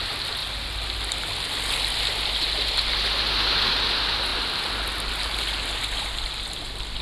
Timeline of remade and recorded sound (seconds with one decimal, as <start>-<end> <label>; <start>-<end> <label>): 0.0-7.0 recorded